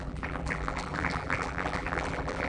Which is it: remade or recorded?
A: remade